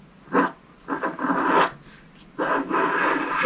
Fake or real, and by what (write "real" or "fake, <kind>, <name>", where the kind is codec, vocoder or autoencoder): real